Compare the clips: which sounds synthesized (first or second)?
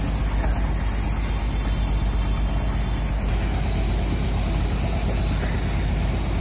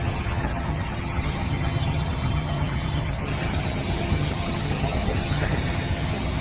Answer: second